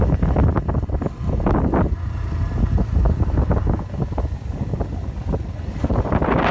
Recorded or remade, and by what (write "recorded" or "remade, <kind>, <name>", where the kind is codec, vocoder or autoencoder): recorded